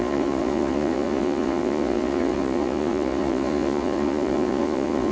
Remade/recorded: remade